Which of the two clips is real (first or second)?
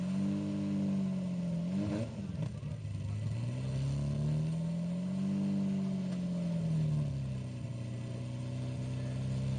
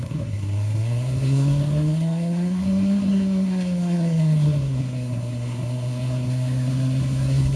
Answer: first